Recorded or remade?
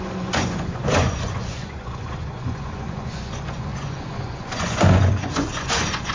remade